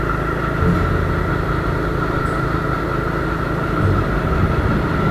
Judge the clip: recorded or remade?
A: recorded